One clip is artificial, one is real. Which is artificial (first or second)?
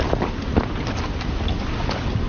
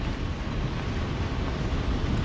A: first